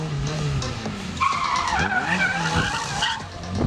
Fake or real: real